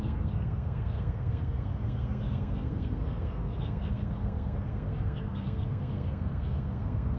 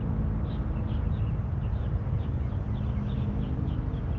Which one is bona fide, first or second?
second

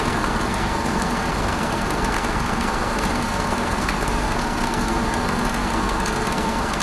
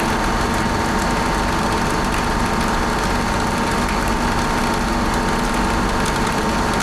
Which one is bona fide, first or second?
second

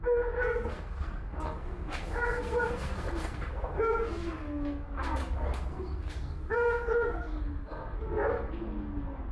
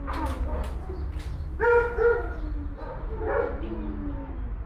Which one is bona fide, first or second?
second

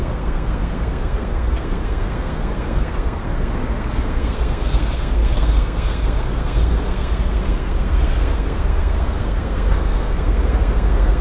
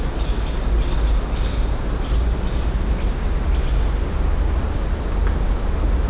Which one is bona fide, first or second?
second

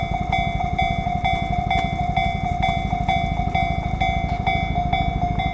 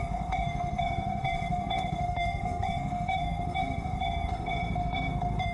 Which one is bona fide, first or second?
first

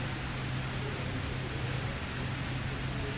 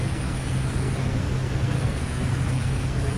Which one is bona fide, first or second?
first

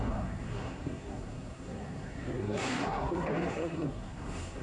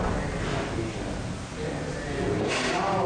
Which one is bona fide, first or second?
second